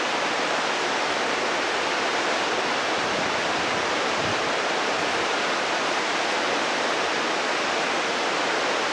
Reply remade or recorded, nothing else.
recorded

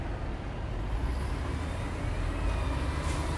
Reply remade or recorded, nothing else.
recorded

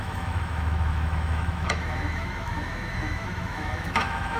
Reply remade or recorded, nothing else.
remade